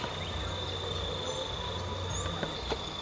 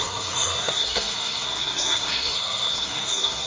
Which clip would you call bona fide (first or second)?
first